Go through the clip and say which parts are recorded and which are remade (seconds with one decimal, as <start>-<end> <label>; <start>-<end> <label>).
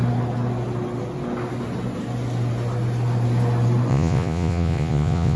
0.0-3.9 recorded; 3.9-5.4 remade